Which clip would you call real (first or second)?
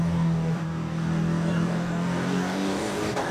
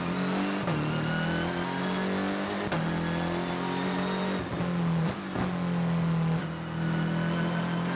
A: second